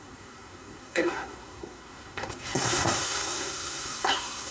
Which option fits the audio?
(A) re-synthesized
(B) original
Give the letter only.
A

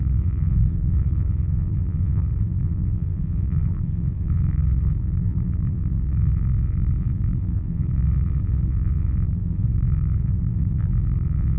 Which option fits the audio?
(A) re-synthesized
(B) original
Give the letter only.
A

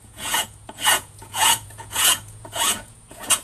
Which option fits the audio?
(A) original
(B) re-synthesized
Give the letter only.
B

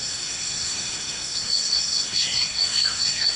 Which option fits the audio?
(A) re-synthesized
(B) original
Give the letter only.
A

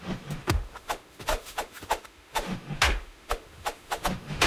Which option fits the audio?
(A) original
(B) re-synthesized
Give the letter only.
B